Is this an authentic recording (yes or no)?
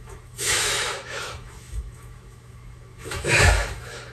no